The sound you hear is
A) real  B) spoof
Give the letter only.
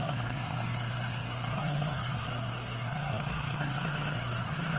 B